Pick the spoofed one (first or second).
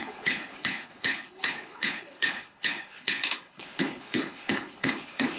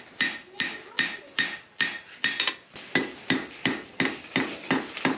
first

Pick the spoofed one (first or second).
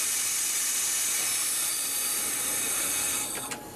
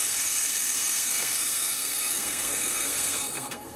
second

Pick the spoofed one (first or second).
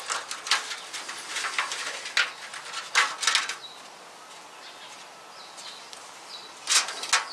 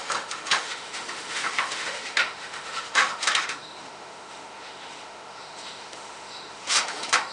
second